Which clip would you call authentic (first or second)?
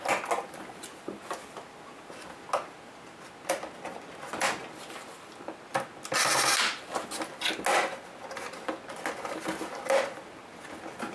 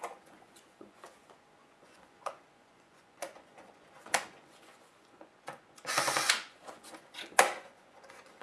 first